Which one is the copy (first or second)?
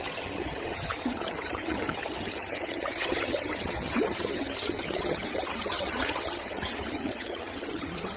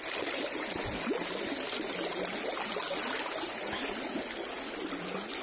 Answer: first